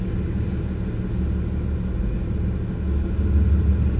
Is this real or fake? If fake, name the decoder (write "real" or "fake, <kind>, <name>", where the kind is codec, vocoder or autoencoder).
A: real